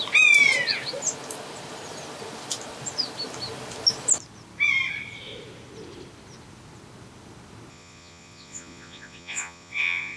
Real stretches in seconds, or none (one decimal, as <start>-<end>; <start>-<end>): 0.0-7.7